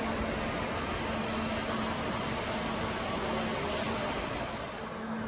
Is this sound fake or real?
real